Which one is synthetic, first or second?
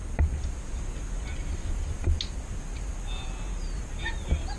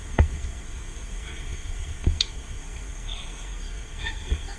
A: second